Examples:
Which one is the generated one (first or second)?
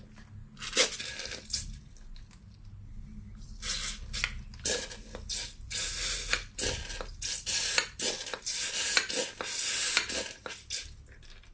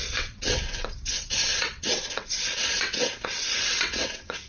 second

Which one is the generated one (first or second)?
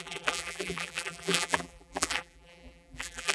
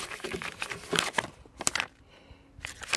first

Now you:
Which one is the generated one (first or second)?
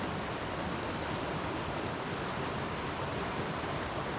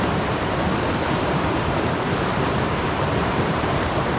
second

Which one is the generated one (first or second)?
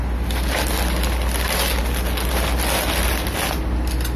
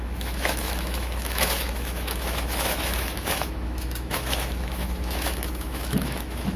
second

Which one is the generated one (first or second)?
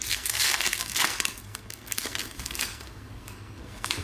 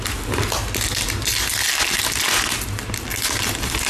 first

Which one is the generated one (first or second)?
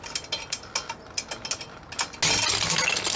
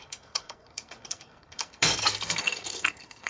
second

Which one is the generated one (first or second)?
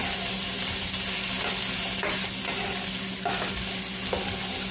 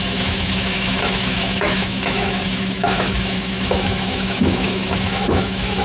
second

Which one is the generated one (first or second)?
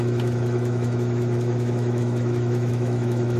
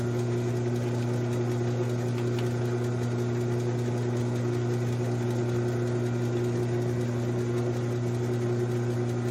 first